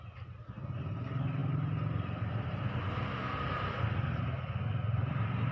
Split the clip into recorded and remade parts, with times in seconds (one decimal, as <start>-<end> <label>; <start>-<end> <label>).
0.0-5.5 recorded

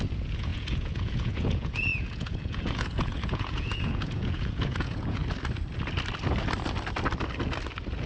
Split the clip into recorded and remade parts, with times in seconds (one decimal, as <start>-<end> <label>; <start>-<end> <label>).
0.0-5.2 remade; 5.2-8.1 recorded